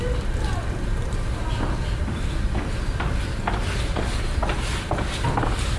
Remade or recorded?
recorded